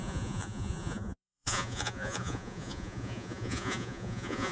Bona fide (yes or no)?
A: no